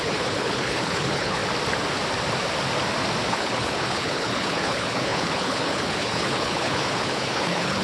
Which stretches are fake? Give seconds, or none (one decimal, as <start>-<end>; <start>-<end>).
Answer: 0.0-1.4; 3.3-7.8